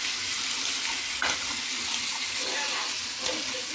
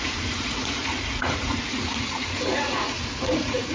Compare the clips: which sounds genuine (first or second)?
first